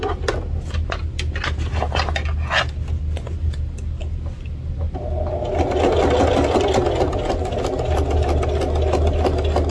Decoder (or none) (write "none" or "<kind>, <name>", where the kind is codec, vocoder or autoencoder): none